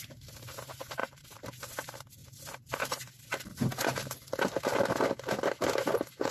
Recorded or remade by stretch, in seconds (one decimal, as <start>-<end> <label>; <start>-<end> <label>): 0.0-2.2 remade; 2.2-6.3 recorded